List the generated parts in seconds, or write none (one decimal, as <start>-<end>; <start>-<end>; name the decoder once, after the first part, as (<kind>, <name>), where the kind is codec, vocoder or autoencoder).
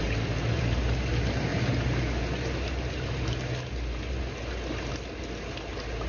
none